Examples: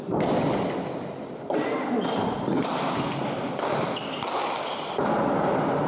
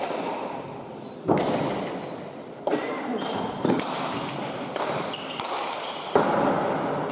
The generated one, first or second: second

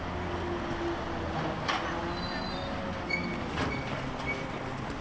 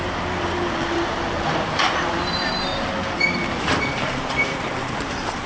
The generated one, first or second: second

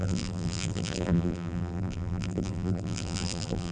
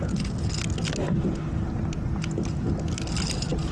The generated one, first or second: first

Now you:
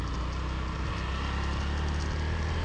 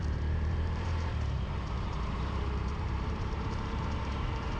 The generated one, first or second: second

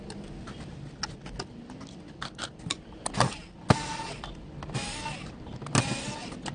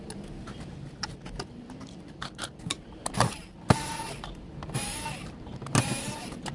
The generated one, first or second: second